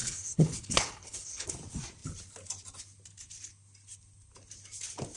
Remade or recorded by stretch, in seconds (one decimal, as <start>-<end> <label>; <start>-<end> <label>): 0.0-1.5 remade; 1.5-5.2 recorded